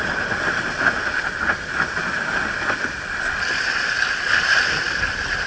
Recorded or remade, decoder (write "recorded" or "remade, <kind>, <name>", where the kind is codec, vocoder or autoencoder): recorded